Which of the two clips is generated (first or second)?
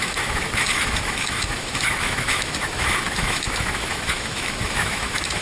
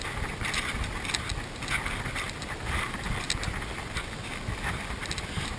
first